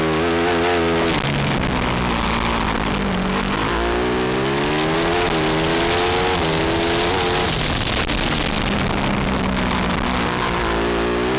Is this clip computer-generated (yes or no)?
no